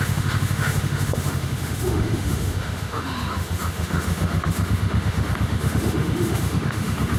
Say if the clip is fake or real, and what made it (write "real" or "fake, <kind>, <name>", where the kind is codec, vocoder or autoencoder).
fake, autoencoder, DAC-VAE